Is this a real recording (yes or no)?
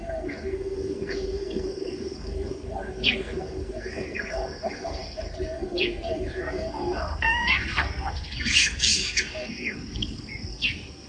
no